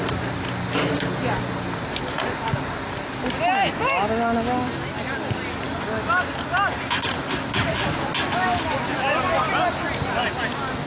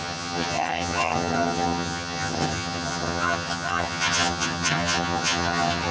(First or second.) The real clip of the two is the first